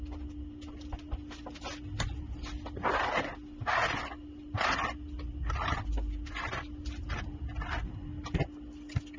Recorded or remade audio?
recorded